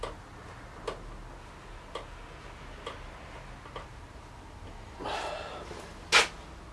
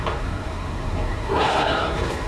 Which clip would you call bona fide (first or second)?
first